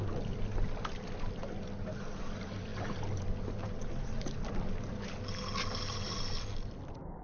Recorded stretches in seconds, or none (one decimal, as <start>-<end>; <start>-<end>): 0.0-7.2